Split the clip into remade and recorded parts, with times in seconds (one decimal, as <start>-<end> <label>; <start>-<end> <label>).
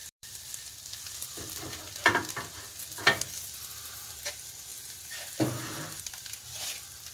0.0-1.8 remade; 1.8-4.7 recorded; 4.7-6.3 remade; 6.3-7.1 recorded